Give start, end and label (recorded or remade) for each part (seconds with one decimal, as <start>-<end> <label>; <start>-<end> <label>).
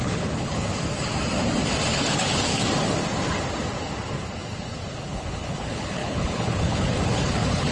0.0-0.7 remade; 0.7-1.9 recorded; 1.9-2.5 remade; 2.5-5.1 recorded; 5.1-7.7 remade